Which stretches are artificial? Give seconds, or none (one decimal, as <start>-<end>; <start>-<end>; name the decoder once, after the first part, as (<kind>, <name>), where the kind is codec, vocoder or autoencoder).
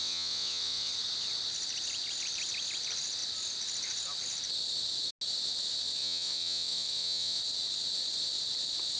0.0-0.9 (vocoder, WaveNeXt); 6.0-7.4